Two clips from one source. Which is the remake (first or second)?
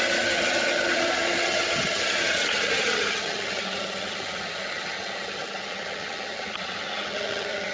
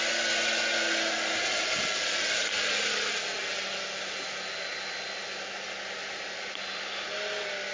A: first